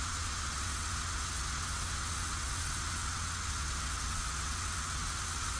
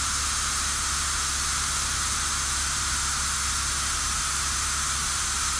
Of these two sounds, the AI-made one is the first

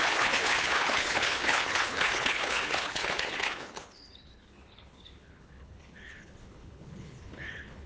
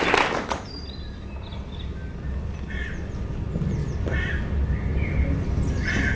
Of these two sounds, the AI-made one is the first